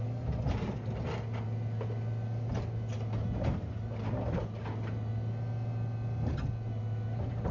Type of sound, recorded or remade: recorded